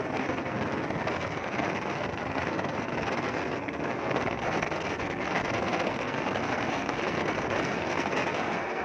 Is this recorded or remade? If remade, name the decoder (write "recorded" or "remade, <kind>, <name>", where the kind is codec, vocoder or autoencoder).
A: remade, codec, SNAC